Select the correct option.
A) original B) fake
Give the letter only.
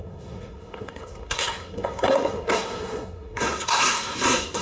B